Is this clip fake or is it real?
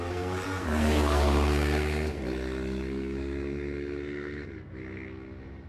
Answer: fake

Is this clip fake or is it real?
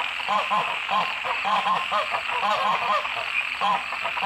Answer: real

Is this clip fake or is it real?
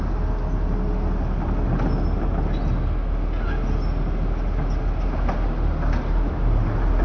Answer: real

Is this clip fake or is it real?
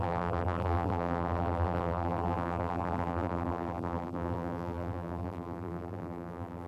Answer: fake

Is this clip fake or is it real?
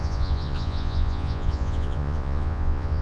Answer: fake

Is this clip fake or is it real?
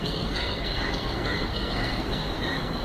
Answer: fake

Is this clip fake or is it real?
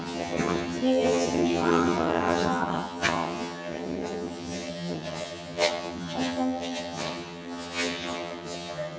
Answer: fake